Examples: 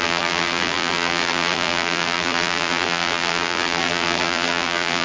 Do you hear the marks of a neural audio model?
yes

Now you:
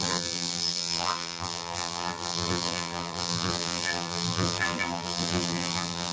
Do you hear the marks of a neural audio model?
yes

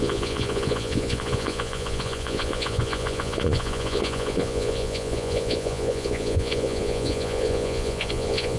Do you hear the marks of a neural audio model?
yes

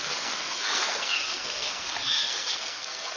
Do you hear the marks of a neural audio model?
yes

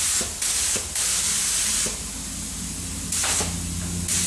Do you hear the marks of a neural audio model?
no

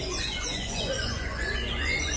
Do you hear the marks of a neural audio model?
yes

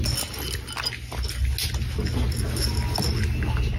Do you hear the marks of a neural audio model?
no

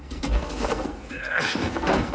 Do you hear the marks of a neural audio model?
yes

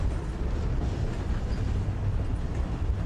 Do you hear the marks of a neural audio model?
no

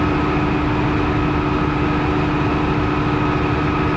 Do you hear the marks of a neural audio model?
no